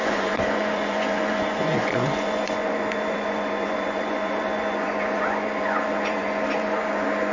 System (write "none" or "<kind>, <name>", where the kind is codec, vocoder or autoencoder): vocoder, Vocos